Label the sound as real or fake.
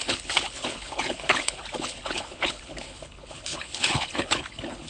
fake